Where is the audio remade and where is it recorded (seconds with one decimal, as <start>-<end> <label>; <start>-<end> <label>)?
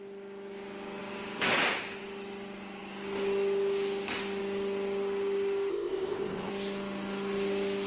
0.0-5.7 recorded; 5.7-6.5 remade; 6.5-7.9 recorded